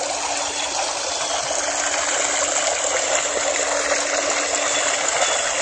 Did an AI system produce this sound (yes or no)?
no